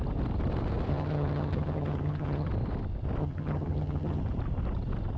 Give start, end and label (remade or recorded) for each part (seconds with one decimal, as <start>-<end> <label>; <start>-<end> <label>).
0.0-0.9 recorded; 0.9-2.5 remade; 2.5-3.2 recorded; 3.2-4.2 remade; 4.2-5.2 recorded